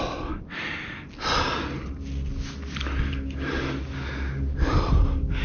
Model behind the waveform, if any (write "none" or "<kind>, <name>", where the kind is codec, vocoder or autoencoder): none